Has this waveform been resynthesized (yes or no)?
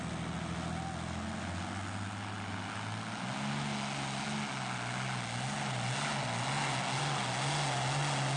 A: no